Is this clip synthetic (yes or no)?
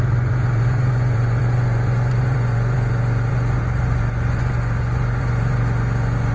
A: yes